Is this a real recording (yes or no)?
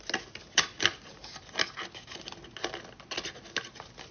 yes